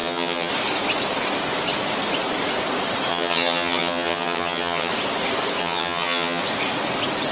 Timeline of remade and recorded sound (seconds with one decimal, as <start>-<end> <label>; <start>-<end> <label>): 0.0-0.5 remade; 0.5-3.1 recorded; 3.1-4.9 remade; 4.9-5.6 recorded; 5.6-6.4 remade; 6.4-7.3 recorded